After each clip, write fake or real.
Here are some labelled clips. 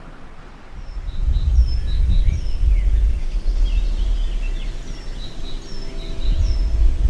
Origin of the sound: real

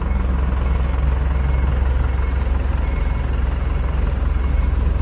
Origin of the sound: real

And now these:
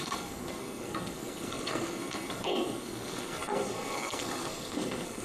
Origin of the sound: fake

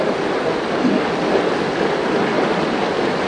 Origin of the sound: real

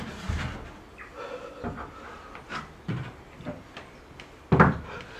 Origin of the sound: real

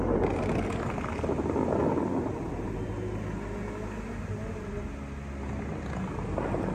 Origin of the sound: real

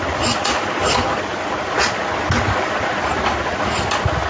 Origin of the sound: real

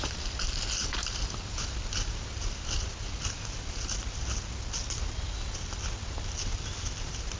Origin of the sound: real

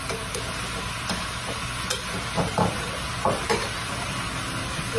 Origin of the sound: real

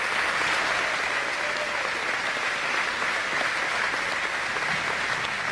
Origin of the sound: real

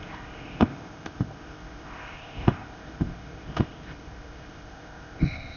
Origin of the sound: fake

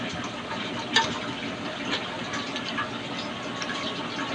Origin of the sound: real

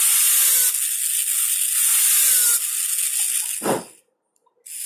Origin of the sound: real